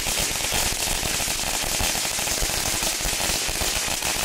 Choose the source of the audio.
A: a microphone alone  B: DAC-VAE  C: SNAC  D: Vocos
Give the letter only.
A